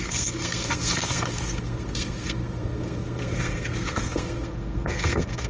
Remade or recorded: remade